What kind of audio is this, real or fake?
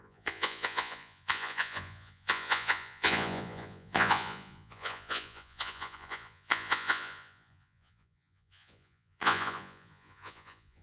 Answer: fake